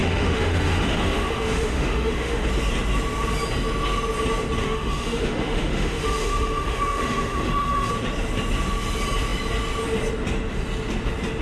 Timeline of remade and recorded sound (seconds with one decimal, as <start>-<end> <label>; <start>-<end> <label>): 0.0-2.5 remade; 2.5-4.6 recorded; 4.6-7.9 remade; 7.9-11.4 recorded